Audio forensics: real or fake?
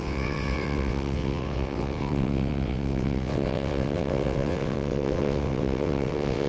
fake